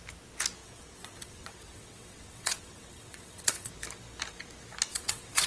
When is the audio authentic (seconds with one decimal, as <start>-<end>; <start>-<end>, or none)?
0.0-0.6; 3.7-4.9

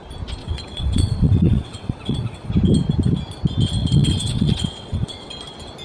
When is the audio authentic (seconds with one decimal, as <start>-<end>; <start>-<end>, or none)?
0.0-0.4; 2.5-3.8; 5.3-5.8

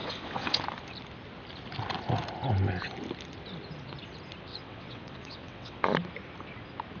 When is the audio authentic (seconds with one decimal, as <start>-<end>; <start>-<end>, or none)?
0.6-4.5; 5.8-7.0

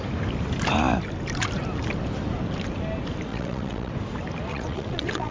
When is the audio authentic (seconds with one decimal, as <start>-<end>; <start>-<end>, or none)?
0.0-3.3; 3.9-4.5

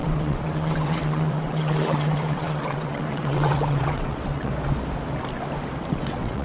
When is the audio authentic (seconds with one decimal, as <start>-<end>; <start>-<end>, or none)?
4.5-5.9

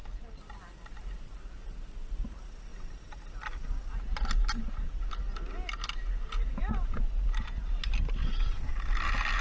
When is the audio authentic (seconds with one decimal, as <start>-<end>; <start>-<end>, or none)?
0.0-8.2; 8.7-9.4

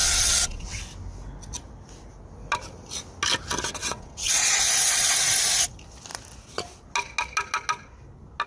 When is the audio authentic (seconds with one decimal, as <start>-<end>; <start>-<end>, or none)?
0.8-3.8; 5.4-8.5

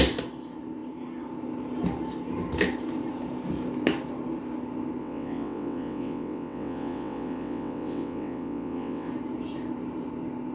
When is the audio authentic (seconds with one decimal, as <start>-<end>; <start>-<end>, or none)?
0.0-5.0; 9.1-10.5